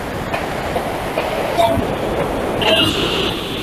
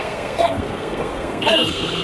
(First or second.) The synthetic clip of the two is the second